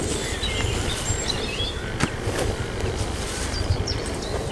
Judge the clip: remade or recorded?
recorded